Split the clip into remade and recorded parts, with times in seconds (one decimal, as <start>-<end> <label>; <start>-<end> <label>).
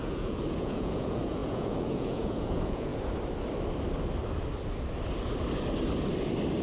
0.0-2.9 remade; 2.9-6.6 recorded